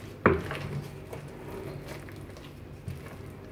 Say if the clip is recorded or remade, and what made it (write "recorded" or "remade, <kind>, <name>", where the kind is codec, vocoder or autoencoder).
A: recorded